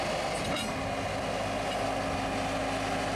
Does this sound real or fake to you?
real